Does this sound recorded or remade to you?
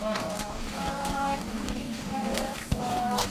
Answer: remade